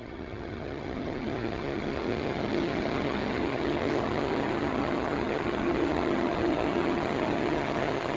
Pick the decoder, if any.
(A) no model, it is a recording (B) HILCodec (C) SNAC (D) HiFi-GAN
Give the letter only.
D